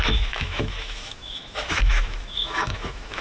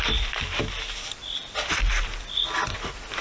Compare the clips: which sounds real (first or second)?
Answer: second